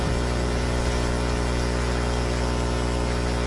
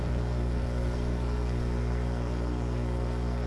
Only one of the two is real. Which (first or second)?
first